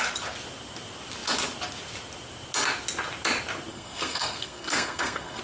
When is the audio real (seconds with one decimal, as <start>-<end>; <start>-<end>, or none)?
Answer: 0.0-3.7